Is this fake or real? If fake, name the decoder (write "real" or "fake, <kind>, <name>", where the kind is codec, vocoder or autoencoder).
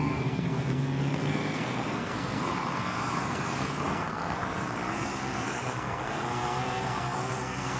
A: fake, codec, SNAC